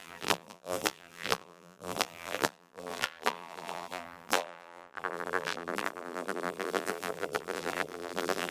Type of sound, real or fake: fake